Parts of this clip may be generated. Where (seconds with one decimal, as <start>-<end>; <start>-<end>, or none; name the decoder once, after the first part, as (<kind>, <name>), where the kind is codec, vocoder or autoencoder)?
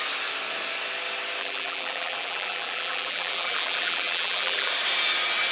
1.4-4.7 (vocoder, BigVGAN v2)